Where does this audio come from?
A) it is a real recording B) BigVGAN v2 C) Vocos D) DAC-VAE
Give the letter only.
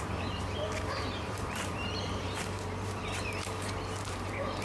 B